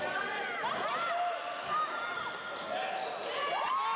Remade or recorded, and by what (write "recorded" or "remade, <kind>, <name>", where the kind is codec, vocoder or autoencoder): recorded